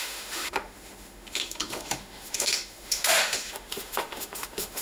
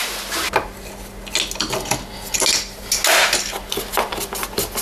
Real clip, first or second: second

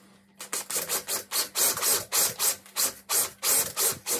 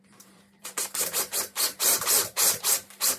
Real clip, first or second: first